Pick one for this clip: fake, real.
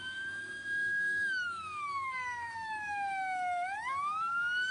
fake